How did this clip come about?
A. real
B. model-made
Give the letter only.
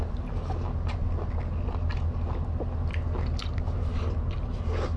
A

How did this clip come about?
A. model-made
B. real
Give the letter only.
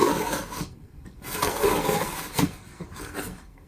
A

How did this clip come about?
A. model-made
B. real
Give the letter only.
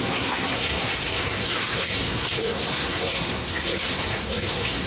A